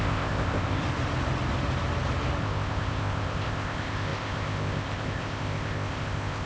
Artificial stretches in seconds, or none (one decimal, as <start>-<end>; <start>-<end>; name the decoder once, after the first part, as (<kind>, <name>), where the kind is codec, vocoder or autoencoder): 0.0-0.8 (codec, ZipCodec); 2.4-6.5